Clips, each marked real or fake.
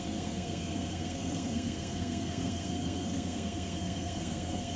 fake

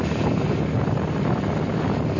real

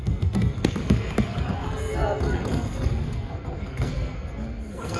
fake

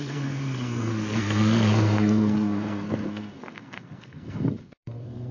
fake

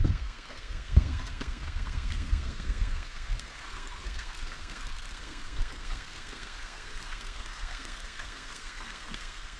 fake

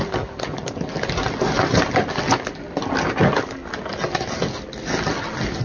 real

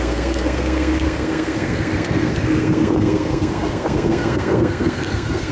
fake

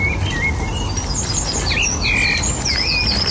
real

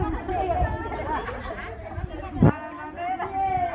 real